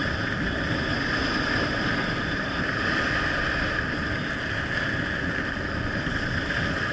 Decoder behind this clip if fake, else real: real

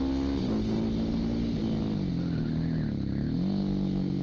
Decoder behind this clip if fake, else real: real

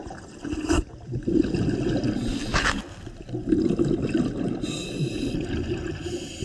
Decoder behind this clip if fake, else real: real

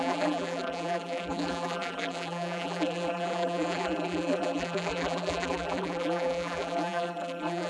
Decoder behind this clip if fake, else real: fake, vocoder, BigVGAN v2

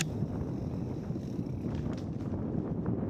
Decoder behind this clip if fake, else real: real